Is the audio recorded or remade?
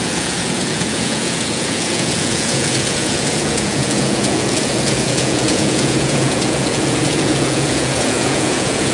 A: remade